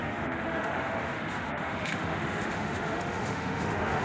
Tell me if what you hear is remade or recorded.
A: remade